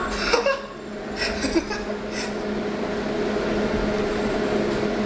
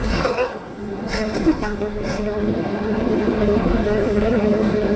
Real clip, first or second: first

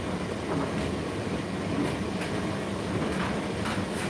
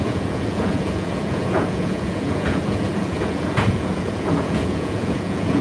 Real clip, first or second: first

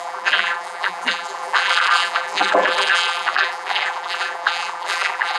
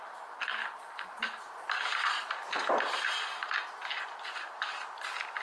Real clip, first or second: second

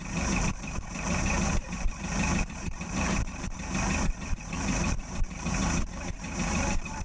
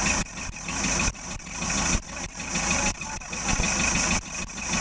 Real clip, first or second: second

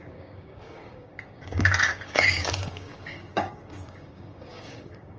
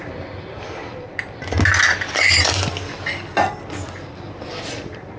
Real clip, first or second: second